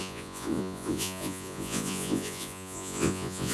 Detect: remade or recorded remade